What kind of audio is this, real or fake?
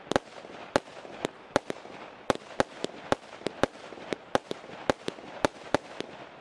real